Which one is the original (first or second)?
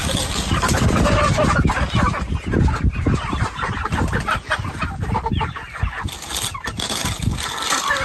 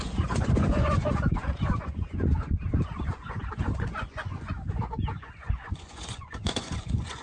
first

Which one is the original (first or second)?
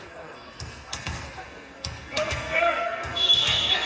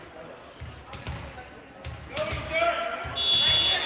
second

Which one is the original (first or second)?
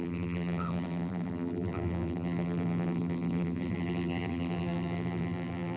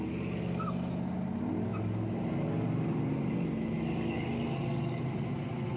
second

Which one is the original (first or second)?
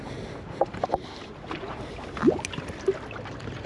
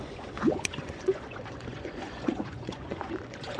first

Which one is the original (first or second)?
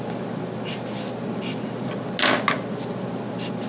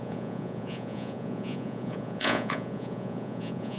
first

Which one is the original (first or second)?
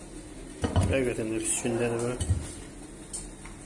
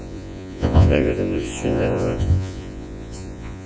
first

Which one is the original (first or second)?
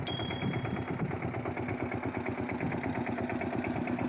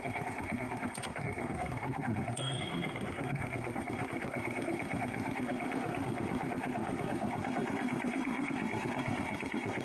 first